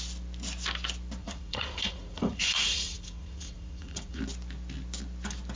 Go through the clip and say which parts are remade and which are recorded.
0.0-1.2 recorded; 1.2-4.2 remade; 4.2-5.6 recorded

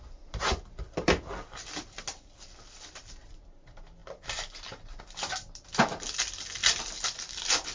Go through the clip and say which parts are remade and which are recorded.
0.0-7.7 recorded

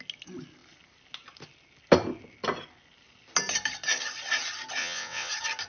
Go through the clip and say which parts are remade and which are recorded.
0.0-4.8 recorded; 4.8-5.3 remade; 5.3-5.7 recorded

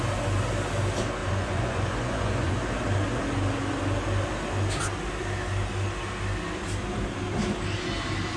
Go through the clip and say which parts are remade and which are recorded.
0.0-1.2 recorded; 1.2-2.5 remade; 2.5-8.4 recorded